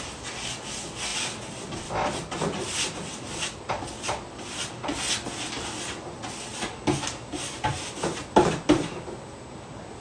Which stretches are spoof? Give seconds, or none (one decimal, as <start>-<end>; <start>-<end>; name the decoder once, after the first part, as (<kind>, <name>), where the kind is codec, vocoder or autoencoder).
none